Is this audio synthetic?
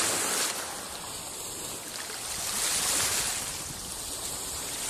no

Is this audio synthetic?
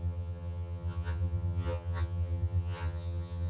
yes